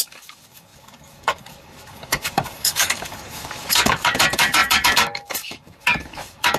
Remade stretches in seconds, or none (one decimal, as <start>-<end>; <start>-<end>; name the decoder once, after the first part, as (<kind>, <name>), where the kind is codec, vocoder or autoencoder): 0.0-6.6 (codec, DAC)